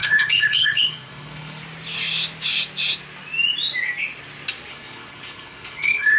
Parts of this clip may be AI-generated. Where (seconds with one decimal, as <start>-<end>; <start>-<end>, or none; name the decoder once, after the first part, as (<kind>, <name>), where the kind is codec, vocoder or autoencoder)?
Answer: 0.0-1.6 (codec, HILCodec); 4.7-6.2